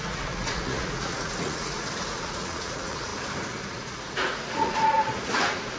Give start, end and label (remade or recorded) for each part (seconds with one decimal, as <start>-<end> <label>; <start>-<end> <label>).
0.0-3.1 remade; 3.1-3.7 recorded; 3.7-5.8 remade